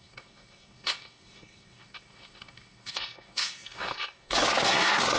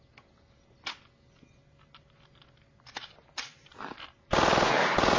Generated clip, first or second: first